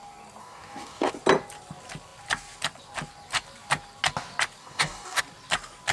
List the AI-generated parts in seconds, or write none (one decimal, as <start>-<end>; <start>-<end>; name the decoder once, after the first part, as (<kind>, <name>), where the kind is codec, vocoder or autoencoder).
0.4-1.1 (codec, DAC); 4.6-5.2